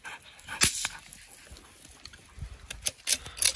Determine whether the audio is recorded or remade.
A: recorded